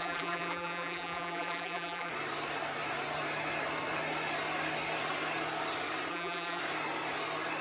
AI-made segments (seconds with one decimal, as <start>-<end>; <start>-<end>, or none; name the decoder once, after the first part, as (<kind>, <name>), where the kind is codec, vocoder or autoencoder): 0.0-2.1 (vocoder, BigVGAN v2); 6.1-6.6